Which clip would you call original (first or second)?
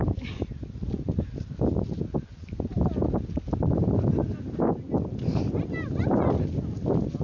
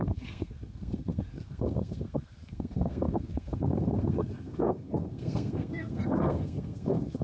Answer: first